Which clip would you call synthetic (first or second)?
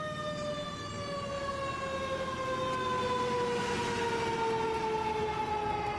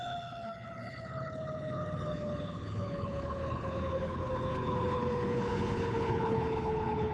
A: second